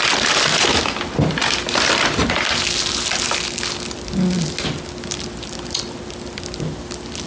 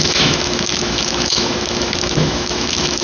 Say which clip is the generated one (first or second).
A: second